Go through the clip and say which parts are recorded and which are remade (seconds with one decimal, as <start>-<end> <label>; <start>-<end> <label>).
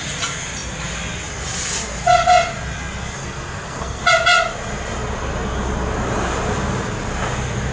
0.0-3.2 recorded; 3.2-4.0 remade; 4.0-7.7 recorded